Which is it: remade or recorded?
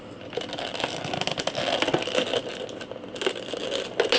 recorded